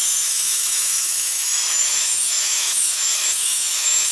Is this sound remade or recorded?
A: remade